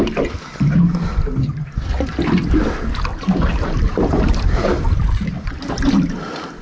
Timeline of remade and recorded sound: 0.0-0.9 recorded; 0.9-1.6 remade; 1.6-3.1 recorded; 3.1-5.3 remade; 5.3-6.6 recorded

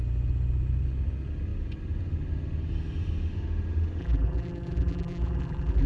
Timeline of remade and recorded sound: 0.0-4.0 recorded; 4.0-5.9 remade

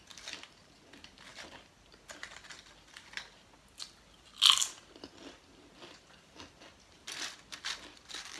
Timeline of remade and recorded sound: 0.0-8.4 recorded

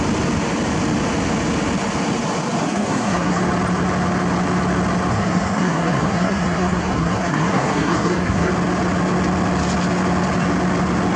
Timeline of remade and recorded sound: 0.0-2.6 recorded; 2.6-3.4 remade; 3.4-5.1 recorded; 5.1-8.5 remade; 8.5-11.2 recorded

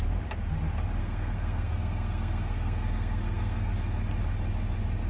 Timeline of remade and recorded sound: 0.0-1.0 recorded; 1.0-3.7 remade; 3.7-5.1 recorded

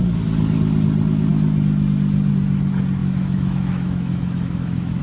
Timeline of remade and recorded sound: 0.0-3.0 recorded; 3.0-5.0 remade

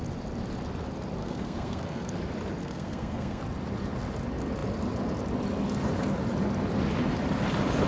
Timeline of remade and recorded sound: 0.0-1.2 recorded; 1.2-2.1 remade; 2.1-2.6 recorded; 2.6-3.4 remade; 3.4-7.9 recorded

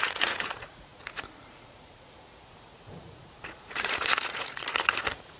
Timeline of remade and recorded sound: 0.0-5.4 remade